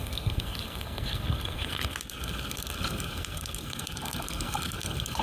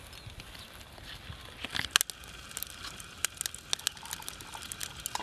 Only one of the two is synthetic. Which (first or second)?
first